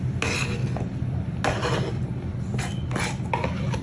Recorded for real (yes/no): yes